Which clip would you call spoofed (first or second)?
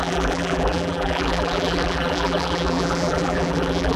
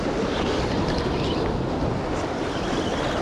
first